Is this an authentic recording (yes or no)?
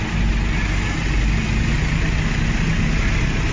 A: yes